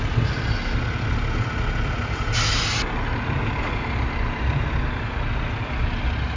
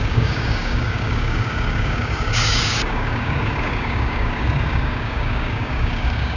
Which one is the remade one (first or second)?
second